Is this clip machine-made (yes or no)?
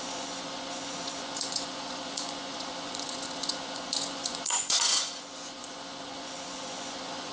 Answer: yes